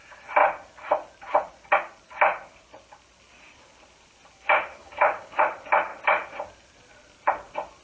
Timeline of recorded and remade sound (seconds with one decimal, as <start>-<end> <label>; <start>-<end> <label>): 0.0-4.8 recorded; 4.8-5.4 remade; 5.4-7.8 recorded